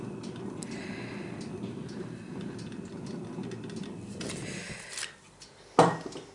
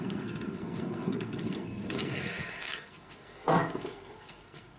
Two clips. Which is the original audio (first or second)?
first